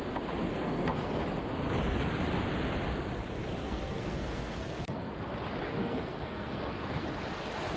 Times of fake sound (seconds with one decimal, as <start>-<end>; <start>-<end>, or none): 0.5-1.2; 3.6-5.1; 5.8-7.1